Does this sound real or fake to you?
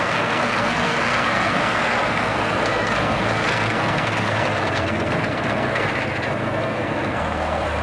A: fake